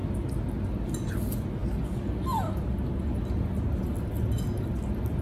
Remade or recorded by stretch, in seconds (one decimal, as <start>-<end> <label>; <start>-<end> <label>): 0.0-5.2 recorded